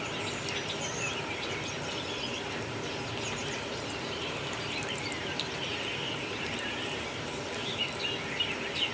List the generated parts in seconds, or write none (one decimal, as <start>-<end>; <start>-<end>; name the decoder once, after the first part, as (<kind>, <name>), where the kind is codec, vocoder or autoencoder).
3.4-7.8 (vocoder, BigVGAN v2)